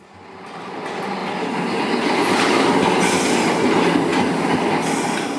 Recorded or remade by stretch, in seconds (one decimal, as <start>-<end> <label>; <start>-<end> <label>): 0.0-5.4 recorded